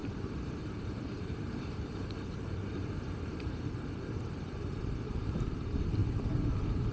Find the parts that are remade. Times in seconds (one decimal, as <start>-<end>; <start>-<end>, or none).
0.0-6.0